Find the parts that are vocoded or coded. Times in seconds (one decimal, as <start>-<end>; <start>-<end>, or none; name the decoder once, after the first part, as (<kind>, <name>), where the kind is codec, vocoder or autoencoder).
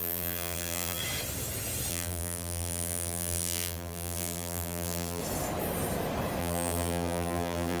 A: 0.0-1.0 (vocoder, BigVGAN v2); 1.9-5.2; 6.4-7.8